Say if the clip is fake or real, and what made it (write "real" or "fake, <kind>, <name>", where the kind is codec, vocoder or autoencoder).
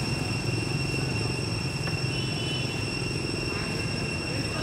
real